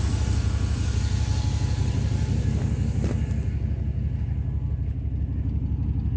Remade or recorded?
recorded